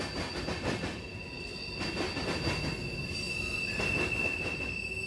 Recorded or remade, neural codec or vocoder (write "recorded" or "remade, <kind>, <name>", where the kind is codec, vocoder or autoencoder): recorded